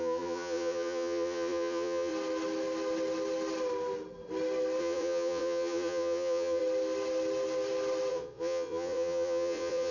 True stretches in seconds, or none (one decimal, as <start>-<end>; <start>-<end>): 2.1-4.8; 6.6-8.1